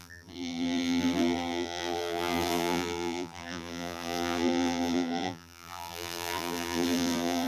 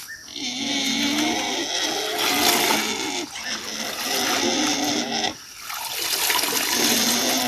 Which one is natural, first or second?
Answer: second